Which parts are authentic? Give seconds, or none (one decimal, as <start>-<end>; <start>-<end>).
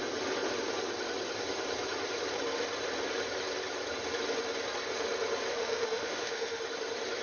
0.0-5.5; 6.6-7.2